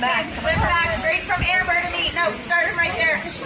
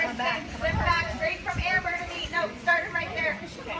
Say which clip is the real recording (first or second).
first